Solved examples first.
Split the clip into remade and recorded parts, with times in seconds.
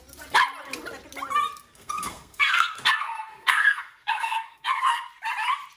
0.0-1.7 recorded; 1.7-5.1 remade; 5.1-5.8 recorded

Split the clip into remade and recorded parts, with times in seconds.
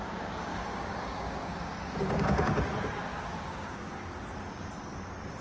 0.0-2.6 remade; 2.6-3.1 recorded; 3.1-4.1 remade; 4.1-5.4 recorded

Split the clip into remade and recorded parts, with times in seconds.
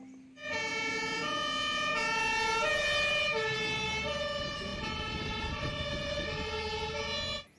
0.0-0.7 recorded; 0.7-2.0 remade; 2.0-7.6 recorded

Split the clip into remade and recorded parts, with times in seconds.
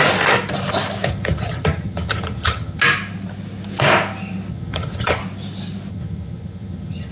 0.0-1.1 recorded; 1.1-2.8 remade; 2.8-4.5 recorded; 4.5-5.2 remade; 5.2-5.9 recorded; 5.9-7.1 remade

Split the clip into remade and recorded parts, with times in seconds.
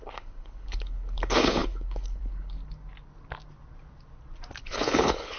0.0-2.6 remade; 2.6-4.6 recorded; 4.6-5.4 remade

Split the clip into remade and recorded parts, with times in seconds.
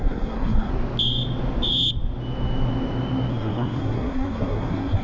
0.0-0.7 remade; 0.7-3.3 recorded; 3.3-5.0 remade